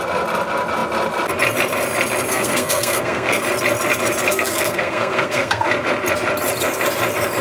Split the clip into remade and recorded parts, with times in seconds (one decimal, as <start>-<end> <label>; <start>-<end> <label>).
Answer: 0.0-2.3 recorded; 2.3-3.4 remade; 3.4-4.3 recorded; 4.3-5.7 remade; 5.7-7.4 recorded